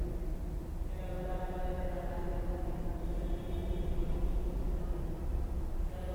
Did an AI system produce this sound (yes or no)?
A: no